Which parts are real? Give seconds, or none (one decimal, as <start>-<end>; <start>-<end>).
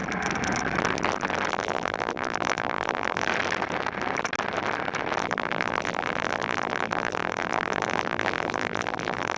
0.0-1.5; 3.3-5.2